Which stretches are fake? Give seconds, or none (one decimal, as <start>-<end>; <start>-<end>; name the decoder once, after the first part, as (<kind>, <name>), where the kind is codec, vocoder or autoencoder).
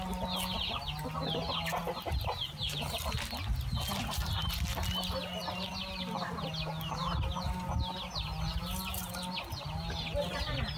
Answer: none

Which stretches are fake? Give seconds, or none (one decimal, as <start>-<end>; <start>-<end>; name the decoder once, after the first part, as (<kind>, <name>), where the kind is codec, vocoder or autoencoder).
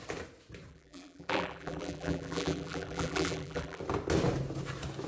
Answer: 0.7-3.8 (vocoder, BigVGAN v2)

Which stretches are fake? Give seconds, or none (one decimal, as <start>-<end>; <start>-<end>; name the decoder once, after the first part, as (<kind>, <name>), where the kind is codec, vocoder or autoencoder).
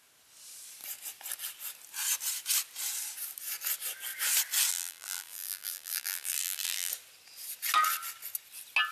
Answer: 4.7-6.9 (vocoder, BigVGAN v2)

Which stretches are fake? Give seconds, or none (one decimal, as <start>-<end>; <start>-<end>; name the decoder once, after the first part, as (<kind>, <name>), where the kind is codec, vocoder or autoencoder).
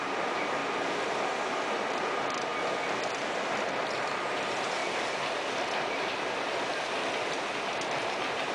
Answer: 0.0-0.6 (vocoder, BigVGAN v2); 1.9-2.5; 4.0-4.8; 7.4-8.5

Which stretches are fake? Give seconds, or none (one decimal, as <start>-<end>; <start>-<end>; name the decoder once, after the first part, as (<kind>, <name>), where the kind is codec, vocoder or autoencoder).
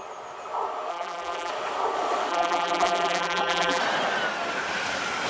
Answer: 0.9-1.5 (vocoder, BigVGAN v2); 2.3-3.8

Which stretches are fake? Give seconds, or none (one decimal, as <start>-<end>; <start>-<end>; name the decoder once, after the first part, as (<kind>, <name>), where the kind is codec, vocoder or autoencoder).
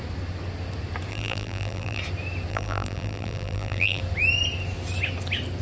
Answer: 1.1-2.0 (vocoder, BigVGAN v2); 2.5-4.0